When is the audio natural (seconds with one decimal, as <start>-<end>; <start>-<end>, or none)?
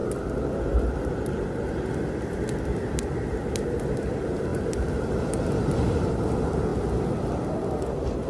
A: 0.0-8.3